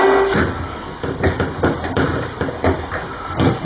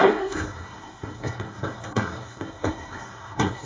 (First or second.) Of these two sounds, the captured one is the first